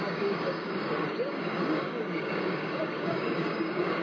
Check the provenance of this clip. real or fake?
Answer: fake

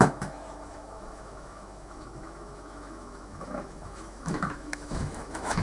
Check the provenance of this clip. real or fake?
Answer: fake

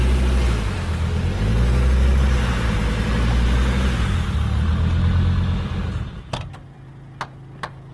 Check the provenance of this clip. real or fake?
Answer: real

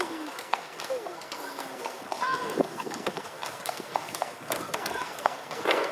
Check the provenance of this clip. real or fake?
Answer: fake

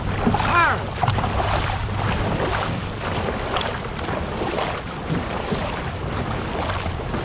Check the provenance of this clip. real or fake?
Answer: real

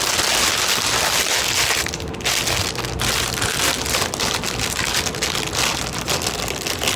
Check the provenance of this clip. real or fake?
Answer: real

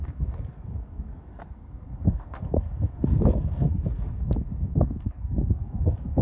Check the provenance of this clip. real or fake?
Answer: fake